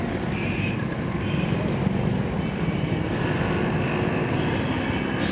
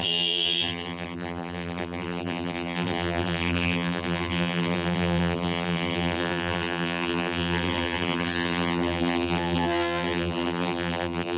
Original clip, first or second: first